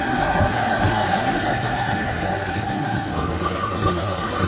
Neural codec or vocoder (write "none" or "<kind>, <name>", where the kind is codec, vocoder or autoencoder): codec, SNAC